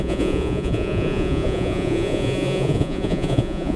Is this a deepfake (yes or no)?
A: yes